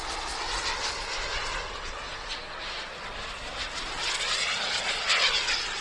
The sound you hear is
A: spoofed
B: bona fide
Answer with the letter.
B